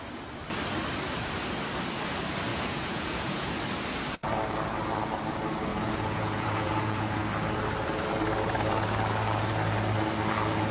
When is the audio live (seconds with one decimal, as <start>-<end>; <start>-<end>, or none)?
0.0-2.5; 3.5-5.7; 7.2-10.7